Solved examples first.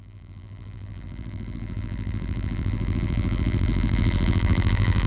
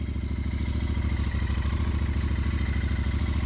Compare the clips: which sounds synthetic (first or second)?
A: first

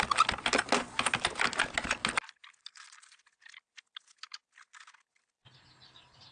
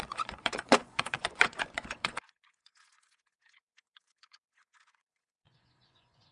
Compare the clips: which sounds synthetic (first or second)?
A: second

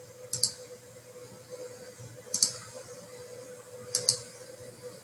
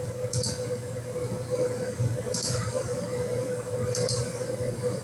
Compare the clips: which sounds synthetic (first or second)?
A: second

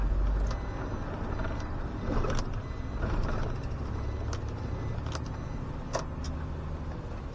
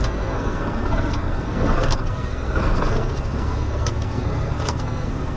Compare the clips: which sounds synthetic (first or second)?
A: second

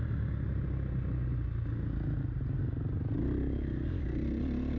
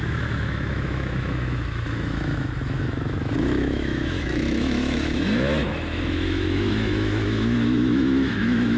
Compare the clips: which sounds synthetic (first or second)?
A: second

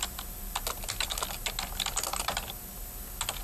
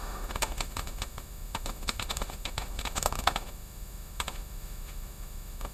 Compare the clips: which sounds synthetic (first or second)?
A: second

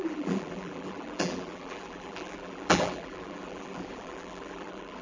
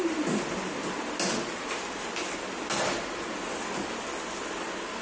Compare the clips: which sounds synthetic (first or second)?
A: first